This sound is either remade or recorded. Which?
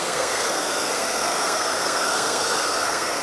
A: remade